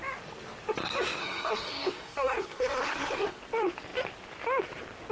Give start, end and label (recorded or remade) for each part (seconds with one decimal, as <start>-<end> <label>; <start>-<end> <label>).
0.0-1.2 recorded; 1.2-3.4 remade; 3.4-5.1 recorded